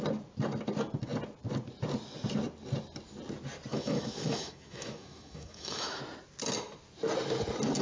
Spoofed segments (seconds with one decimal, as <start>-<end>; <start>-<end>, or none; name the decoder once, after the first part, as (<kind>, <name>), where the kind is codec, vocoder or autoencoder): 3.7-6.0 (autoencoder, DAC-VAE)